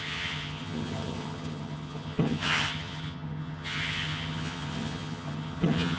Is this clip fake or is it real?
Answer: fake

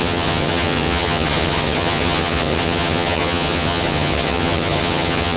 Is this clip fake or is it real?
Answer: fake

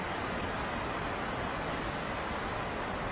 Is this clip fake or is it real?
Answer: real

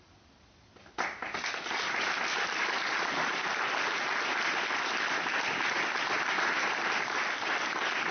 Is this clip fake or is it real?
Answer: real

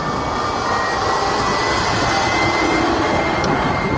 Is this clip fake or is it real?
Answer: real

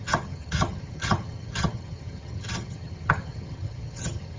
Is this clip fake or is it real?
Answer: fake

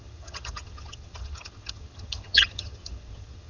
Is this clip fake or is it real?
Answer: fake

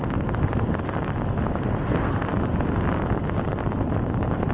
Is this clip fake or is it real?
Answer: real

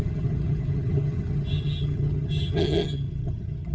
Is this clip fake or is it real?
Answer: fake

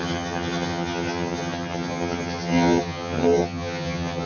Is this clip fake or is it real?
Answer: fake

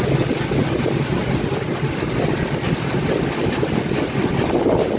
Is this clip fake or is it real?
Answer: real